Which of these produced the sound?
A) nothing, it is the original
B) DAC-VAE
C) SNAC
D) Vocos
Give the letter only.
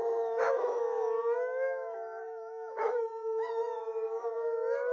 B